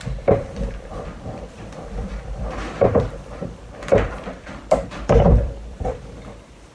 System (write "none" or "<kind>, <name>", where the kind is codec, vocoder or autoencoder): vocoder, BigVGAN v2